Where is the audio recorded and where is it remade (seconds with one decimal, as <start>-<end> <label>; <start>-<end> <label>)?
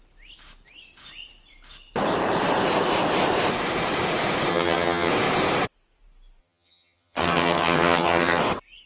0.0-4.5 recorded; 4.5-5.1 remade; 5.1-6.4 recorded; 6.4-8.4 remade; 8.4-8.9 recorded